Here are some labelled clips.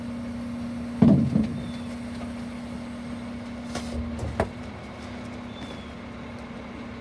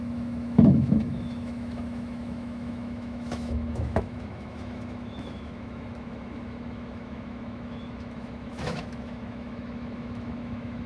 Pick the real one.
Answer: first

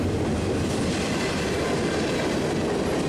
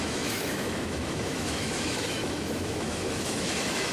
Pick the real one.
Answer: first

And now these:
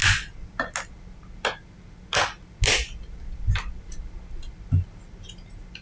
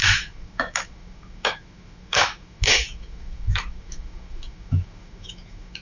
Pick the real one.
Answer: first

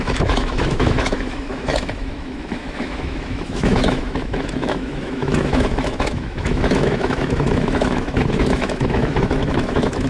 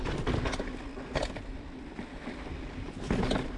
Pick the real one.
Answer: second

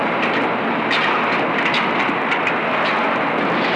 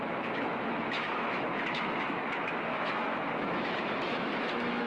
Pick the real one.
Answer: first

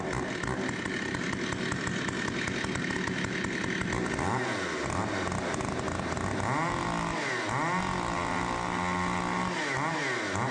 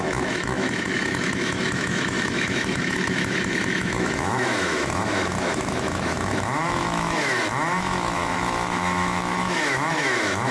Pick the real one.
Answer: first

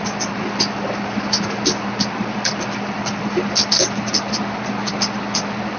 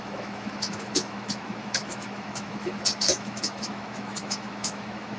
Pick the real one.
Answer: first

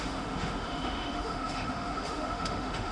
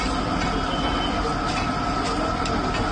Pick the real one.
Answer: second